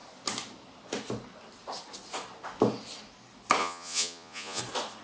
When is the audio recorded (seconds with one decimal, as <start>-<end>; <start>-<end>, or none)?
0.0-3.6; 4.6-5.0